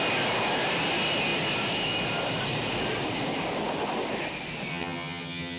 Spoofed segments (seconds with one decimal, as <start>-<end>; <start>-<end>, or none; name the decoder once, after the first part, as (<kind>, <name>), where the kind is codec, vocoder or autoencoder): 4.7-5.6 (vocoder, HiFi-GAN)